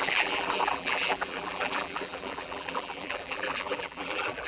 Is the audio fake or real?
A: fake